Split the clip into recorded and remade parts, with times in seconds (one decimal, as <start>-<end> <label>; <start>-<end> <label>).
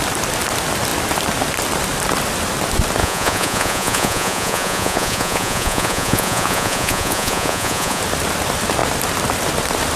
0.0-3.0 recorded; 3.0-8.0 remade; 8.0-10.0 recorded